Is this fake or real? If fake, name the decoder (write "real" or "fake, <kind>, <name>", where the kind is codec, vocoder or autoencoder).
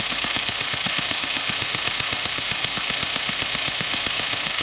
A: fake, autoencoder, DAC-VAE